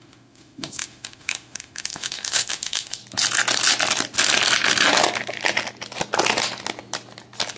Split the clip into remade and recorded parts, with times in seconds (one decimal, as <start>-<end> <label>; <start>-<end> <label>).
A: 0.0-3.0 remade; 3.0-7.6 recorded